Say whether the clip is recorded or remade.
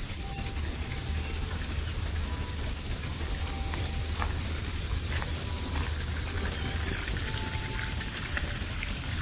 remade